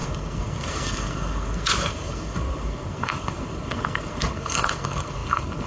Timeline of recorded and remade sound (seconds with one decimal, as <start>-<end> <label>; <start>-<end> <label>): 0.0-5.7 remade